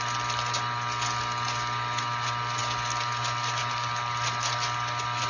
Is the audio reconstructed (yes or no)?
no